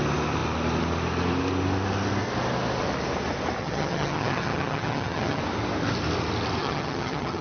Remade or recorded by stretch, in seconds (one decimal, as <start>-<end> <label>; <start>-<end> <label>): 0.0-3.6 recorded; 3.6-5.4 remade; 5.4-6.6 recorded; 6.6-7.4 remade